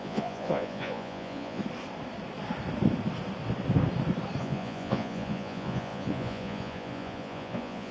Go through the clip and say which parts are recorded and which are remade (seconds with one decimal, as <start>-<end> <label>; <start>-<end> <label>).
0.0-1.6 remade; 1.6-4.4 recorded; 4.4-7.9 remade